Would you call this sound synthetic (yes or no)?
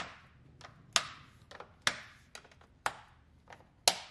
no